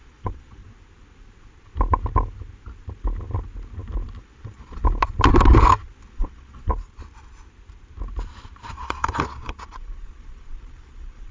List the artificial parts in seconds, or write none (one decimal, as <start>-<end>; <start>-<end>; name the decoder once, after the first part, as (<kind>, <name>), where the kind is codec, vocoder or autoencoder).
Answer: 0.0-0.6 (vocoder, Vocos); 4.2-4.8; 6.1-6.7; 8.7-11.3

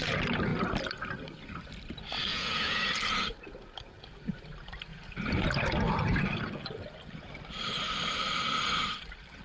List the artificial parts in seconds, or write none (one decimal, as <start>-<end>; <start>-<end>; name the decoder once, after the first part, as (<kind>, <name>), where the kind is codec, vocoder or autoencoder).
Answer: 2.3-3.0 (vocoder, Vocos)

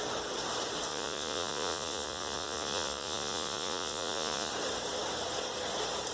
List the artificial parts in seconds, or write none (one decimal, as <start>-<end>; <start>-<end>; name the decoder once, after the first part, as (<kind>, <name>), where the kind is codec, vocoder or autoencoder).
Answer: 0.9-4.5 (vocoder, Vocos)

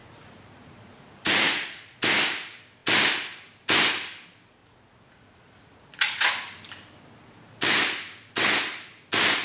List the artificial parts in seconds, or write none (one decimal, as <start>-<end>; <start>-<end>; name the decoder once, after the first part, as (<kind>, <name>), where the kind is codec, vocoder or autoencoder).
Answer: 0.0-2.0 (vocoder, Vocos); 4.6-6.3

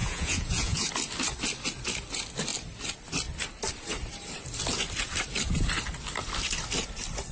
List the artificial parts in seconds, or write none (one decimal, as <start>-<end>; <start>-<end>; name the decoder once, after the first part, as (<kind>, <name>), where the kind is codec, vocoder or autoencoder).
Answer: 0.0-0.9 (vocoder, Vocos)

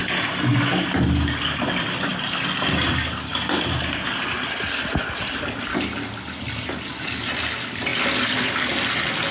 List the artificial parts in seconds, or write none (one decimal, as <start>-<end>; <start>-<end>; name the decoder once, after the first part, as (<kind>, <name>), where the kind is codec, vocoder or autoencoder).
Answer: none